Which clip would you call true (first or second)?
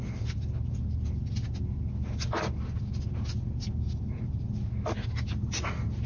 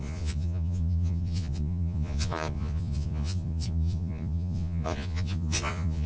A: first